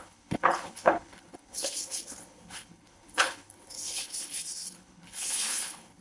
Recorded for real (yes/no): no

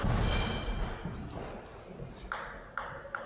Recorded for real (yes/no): yes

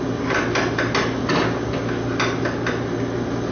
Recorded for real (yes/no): yes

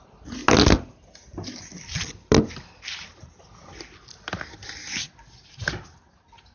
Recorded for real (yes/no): yes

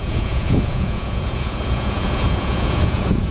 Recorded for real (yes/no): no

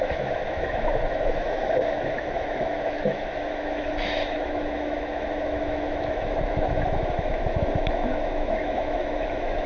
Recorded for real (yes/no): no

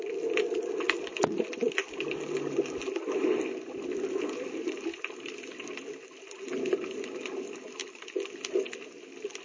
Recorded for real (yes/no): yes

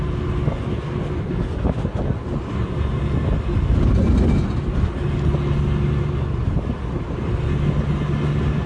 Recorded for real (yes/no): yes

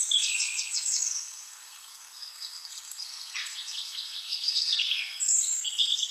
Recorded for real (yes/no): no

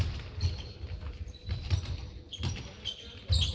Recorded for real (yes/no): yes